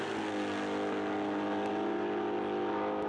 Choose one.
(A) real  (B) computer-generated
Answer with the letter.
A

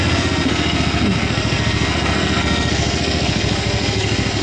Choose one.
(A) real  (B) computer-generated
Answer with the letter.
B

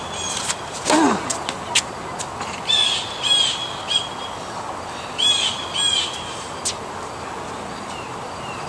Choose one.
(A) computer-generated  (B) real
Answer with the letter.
B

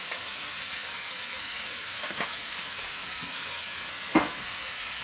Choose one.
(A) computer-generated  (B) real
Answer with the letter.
A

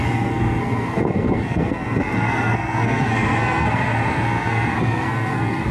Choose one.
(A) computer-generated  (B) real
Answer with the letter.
A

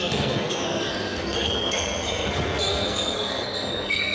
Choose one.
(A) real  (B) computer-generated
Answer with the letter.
B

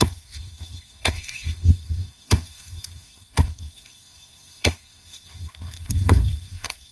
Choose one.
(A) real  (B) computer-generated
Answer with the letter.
B